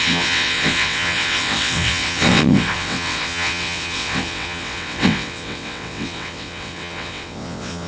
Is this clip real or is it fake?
fake